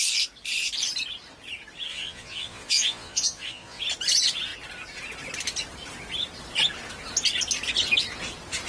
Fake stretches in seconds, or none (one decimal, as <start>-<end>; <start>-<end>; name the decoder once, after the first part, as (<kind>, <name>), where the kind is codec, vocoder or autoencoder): 1.9-3.8 (vocoder, Vocos)